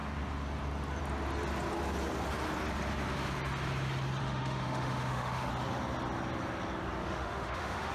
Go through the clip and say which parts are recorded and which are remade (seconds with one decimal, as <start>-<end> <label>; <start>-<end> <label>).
0.0-4.2 recorded; 4.2-5.5 remade; 5.5-7.0 recorded; 7.0-7.9 remade